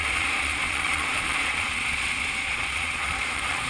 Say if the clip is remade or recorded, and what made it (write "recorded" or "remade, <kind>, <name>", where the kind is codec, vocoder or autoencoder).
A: remade, vocoder, Vocos